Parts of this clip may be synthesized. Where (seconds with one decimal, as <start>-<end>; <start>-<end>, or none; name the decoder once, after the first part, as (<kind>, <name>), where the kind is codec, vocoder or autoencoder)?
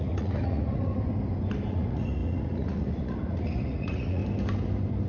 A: 0.0-0.9 (vocoder, Vocos); 1.7-4.2